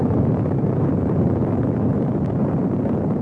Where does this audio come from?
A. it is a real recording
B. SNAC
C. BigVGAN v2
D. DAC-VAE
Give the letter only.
C